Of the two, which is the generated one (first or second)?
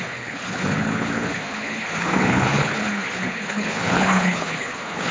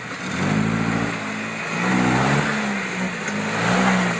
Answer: first